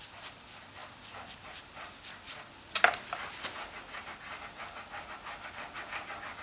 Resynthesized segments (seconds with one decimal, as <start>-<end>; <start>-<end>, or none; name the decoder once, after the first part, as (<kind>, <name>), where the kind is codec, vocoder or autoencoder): none